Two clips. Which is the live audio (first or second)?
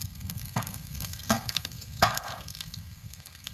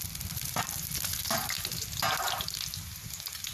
second